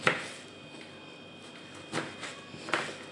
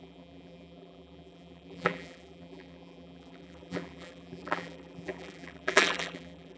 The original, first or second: first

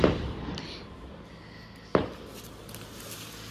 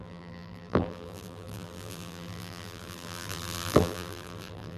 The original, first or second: first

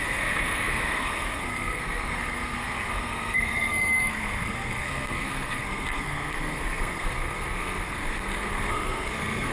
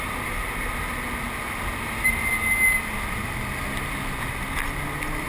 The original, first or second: second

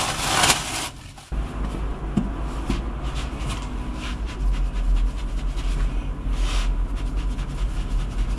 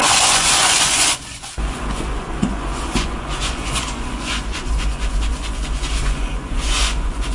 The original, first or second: first